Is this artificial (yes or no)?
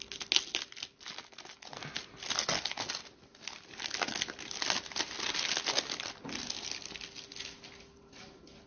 no